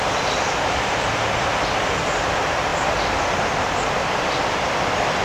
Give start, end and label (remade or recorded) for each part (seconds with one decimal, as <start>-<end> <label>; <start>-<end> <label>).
0.0-5.2 recorded